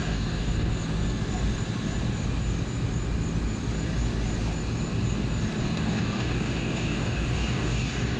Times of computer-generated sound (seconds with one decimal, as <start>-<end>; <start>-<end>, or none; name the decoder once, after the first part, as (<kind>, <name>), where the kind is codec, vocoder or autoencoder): 0.0-0.7 (codec, DAC); 5.6-8.2